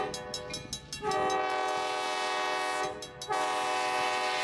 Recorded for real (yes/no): yes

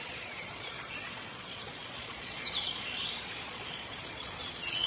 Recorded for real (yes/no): no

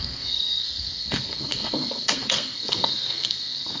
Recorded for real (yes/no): no